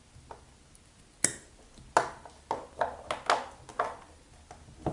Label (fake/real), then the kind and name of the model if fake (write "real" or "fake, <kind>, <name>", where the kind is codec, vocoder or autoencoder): real